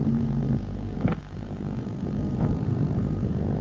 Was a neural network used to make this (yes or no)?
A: yes